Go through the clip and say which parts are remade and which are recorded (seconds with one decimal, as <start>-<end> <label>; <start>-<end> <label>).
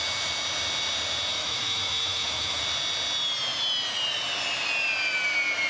0.0-1.3 recorded; 1.3-2.6 remade; 2.6-5.7 recorded